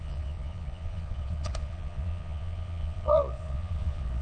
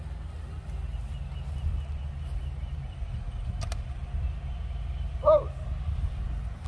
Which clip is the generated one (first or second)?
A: first